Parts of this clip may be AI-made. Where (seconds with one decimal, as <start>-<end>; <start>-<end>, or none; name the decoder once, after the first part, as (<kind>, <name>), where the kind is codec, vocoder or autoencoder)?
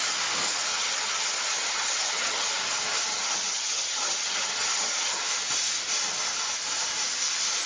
0.7-2.6 (vocoder, HiFi-GAN); 3.1-5.2